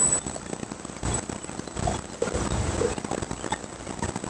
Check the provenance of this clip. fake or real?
real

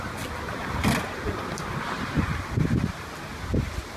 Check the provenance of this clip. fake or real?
real